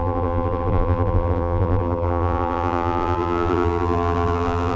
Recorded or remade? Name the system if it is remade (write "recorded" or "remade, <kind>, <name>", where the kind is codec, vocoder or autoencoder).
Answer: remade, vocoder, BigVGAN v2